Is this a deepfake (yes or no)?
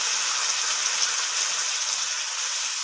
no